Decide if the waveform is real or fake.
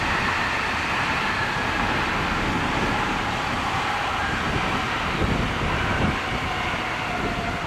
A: real